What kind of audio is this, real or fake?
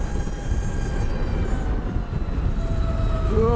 real